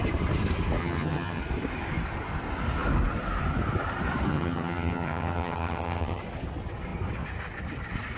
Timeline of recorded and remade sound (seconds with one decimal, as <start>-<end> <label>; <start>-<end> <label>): 0.0-0.8 recorded; 0.8-1.4 remade; 1.4-4.3 recorded; 4.3-6.2 remade; 6.2-8.2 recorded